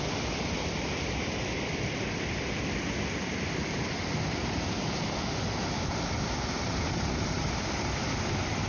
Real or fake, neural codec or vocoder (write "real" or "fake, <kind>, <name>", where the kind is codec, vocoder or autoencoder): real